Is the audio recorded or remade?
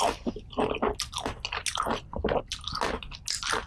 recorded